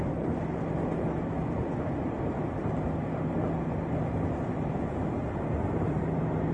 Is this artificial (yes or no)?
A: no